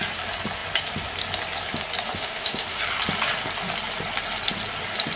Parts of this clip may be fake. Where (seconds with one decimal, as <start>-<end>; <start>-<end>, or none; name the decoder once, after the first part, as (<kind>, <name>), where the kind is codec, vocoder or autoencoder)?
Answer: 2.1-2.8 (autoencoder, DAC-VAE)